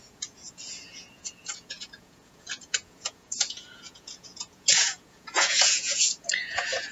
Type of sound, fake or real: fake